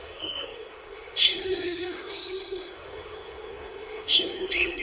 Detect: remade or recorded remade